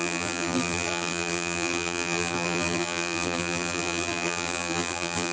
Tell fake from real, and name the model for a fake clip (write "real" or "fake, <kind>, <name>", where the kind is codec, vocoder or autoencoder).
fake, vocoder, BigVGAN v2